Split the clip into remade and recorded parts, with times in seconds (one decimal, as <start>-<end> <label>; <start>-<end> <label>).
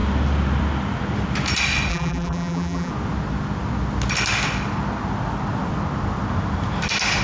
0.0-1.9 recorded; 1.9-2.9 remade; 2.9-7.2 recorded